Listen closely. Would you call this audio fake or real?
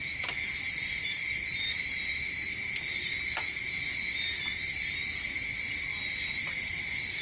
real